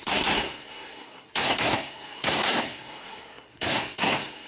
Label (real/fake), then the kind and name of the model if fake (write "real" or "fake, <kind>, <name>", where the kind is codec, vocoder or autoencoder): fake, codec, SNAC